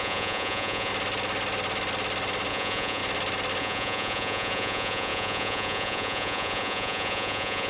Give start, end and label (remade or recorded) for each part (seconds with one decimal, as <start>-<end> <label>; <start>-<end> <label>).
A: 0.0-0.9 remade; 0.9-2.5 recorded; 2.5-3.0 remade; 3.0-3.6 recorded; 3.6-7.7 remade